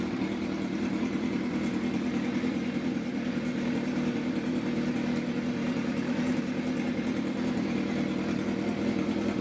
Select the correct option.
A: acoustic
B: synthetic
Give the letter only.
B